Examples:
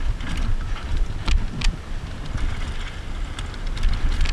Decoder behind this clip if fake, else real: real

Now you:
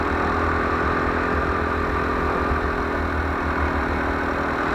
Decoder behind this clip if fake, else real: real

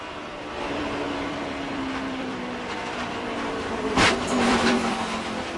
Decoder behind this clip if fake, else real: fake, vocoder, BigVGAN v2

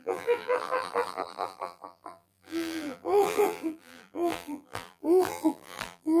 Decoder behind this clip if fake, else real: fake, vocoder, BigVGAN v2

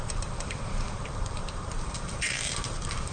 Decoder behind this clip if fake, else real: fake, vocoder, BigVGAN v2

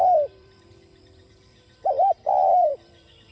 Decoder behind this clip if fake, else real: fake, vocoder, BigVGAN v2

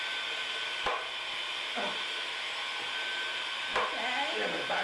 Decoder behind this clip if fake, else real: real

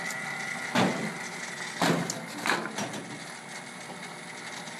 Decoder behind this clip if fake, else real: real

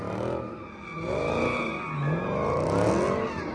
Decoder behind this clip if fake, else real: real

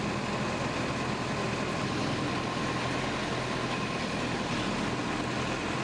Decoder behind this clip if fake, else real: real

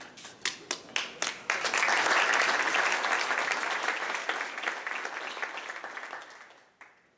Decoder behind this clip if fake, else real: real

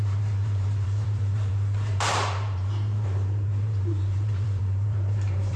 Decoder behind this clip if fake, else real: fake, vocoder, BigVGAN v2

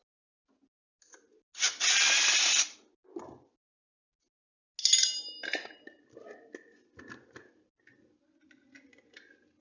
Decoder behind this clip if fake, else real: real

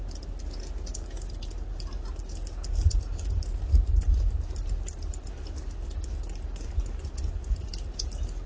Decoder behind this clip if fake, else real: real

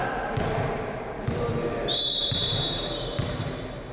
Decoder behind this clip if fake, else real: real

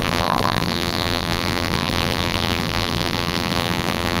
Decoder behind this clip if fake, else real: fake, vocoder, BigVGAN v2